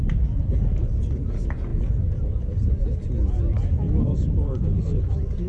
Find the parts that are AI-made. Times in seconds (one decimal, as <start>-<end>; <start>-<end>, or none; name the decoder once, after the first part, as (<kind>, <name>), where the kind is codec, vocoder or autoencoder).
none